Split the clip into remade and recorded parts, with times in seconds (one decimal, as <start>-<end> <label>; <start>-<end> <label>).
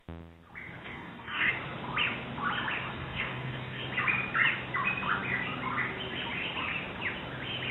0.0-0.8 recorded; 0.8-1.5 remade; 1.5-2.9 recorded; 2.9-3.8 remade; 3.8-7.7 recorded